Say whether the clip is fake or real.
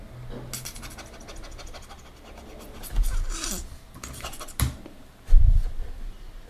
real